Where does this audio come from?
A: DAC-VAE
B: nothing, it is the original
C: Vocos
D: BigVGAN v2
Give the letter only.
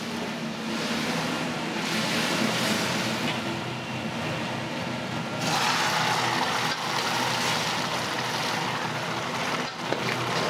B